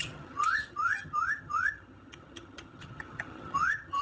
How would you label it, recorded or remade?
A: remade